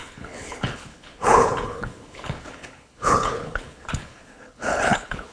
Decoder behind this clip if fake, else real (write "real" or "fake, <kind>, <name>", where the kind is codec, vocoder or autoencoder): fake, codec, HILCodec